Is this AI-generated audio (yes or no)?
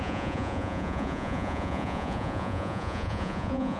yes